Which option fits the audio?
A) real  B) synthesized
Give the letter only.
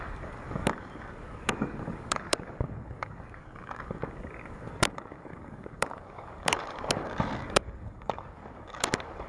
B